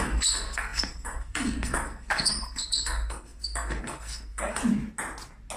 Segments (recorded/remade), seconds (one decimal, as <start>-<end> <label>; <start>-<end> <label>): 0.0-4.6 remade; 4.6-5.6 recorded